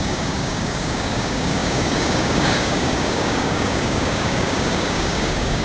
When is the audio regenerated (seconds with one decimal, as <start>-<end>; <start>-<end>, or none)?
0.0-5.6